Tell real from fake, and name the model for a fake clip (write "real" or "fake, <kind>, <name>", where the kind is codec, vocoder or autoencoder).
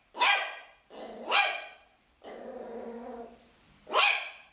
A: fake, vocoder, BigVGAN v2